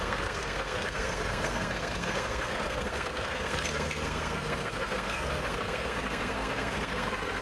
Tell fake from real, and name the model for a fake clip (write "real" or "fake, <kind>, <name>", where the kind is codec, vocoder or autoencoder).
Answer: fake, codec, SNAC